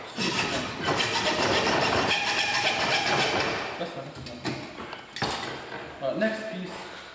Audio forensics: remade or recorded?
recorded